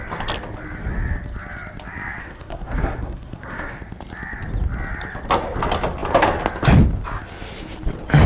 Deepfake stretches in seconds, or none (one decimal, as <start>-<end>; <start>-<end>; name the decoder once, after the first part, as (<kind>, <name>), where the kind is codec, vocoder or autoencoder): 2.2-3.8 (codec, SNAC)